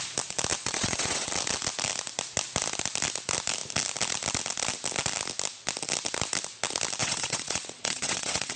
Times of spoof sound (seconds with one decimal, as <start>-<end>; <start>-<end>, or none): 0.6-1.3; 7.0-8.6